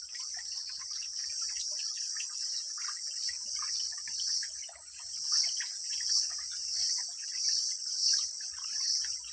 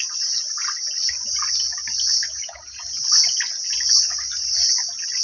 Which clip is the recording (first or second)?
second